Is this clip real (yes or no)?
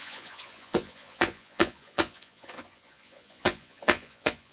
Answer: no